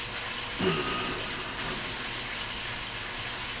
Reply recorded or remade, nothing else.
recorded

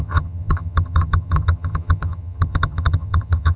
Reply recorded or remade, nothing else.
remade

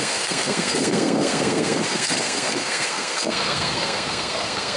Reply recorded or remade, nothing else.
remade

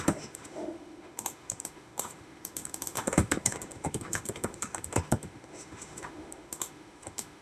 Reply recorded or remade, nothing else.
remade